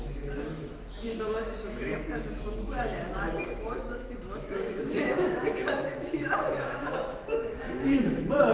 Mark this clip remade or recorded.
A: remade